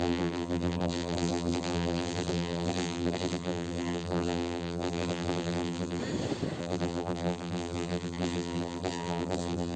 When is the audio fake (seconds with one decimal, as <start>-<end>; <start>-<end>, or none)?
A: 0.0-6.0; 6.6-9.8